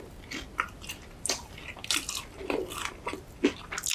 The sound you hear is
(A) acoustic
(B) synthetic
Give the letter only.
A